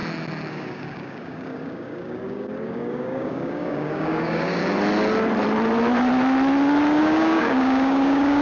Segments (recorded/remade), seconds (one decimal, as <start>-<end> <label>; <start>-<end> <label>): 0.0-0.5 recorded; 0.5-4.6 remade; 4.6-7.0 recorded; 7.0-8.4 remade